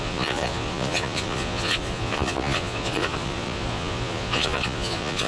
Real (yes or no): no